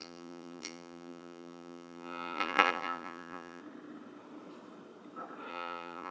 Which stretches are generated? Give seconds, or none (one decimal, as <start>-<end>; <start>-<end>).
0.0-3.6; 5.5-6.1